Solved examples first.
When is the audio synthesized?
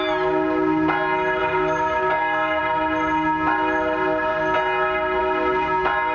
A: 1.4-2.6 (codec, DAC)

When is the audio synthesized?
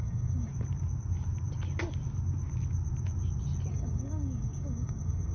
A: 0.0-0.5 (codec, DAC); 3.7-5.3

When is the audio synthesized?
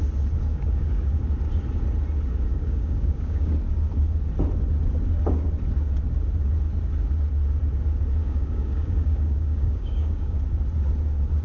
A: 0.5-1.2 (codec, DAC); 2.5-3.5; 8.2-10.4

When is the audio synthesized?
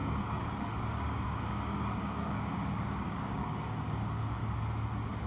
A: 0.0-4.4 (codec, DAC)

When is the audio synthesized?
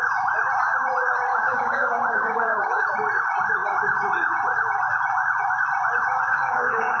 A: 1.3-2.8 (codec, DAC); 6.3-7.0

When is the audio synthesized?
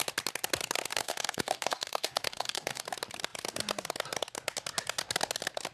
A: 0.9-2.8 (codec, DAC)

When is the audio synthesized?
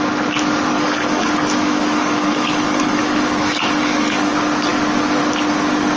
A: 0.7-4.3 (codec, DAC)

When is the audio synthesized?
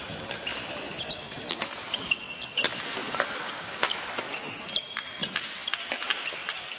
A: 3.4-4.0 (codec, DAC)